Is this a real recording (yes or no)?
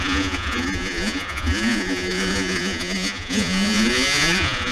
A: no